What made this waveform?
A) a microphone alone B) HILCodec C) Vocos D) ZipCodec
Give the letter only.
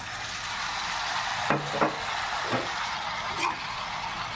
A